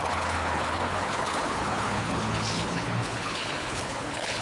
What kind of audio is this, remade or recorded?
remade